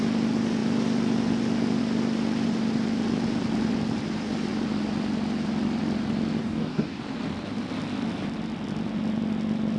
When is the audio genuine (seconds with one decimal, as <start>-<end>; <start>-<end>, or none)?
0.0-6.4; 7.0-9.8